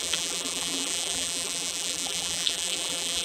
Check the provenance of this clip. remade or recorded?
remade